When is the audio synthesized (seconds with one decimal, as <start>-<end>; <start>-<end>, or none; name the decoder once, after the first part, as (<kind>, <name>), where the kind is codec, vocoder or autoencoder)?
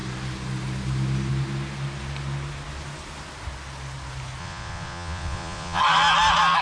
4.4-5.8 (vocoder, Vocos)